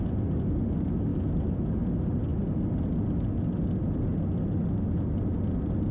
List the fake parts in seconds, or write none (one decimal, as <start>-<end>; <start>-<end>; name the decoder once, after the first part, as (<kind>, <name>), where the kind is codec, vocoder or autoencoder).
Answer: 1.1-1.9 (vocoder, BigVGAN v2)